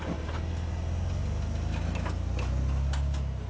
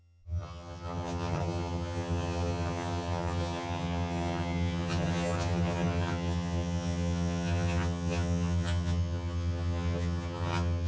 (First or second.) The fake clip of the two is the second